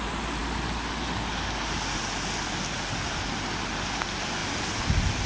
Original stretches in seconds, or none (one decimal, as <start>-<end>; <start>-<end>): 0.0-5.3